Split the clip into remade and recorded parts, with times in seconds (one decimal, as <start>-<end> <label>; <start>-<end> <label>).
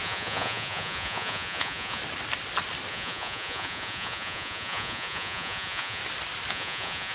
0.0-2.0 remade; 2.0-2.9 recorded; 2.9-6.0 remade; 6.0-6.5 recorded; 6.5-7.1 remade